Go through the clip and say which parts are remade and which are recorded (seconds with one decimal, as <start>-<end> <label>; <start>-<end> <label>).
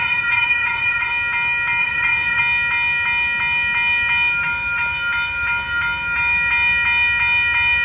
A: 0.0-1.1 remade; 1.1-1.8 recorded; 1.8-2.4 remade; 2.4-7.8 recorded